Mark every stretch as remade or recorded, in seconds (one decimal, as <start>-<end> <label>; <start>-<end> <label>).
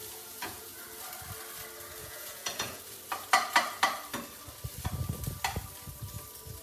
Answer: 0.0-0.8 remade; 0.8-2.0 recorded; 2.0-2.8 remade; 2.8-6.6 recorded